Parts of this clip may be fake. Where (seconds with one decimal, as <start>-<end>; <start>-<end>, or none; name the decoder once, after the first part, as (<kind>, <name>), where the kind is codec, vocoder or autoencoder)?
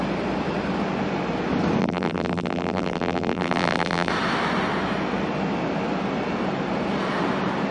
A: 1.8-4.1 (vocoder, BigVGAN v2)